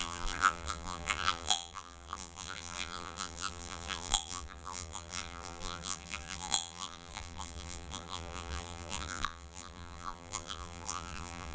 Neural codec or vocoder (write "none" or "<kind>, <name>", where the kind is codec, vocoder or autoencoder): vocoder, BigVGAN v2